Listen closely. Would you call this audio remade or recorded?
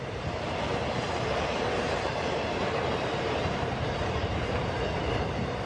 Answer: remade